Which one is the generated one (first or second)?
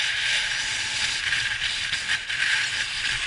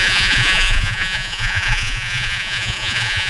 second